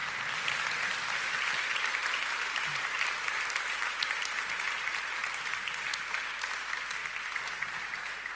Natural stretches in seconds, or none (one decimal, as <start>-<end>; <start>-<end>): 1.9-2.7; 3.6-7.0; 7.6-8.4

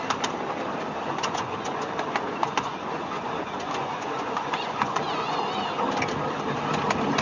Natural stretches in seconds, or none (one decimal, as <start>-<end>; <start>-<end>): 0.0-1.1; 5.4-7.2

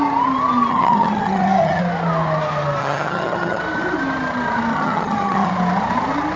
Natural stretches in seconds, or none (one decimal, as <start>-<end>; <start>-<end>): 0.0-0.7; 1.8-2.8; 3.6-4.7; 5.5-6.4

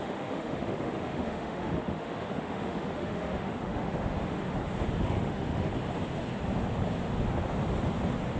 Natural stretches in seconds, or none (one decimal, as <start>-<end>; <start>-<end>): 4.4-4.9; 5.7-8.4

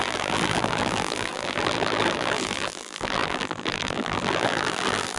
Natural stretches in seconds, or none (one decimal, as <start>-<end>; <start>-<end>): none

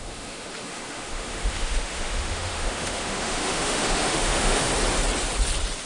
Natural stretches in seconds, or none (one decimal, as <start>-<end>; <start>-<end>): 4.7-5.9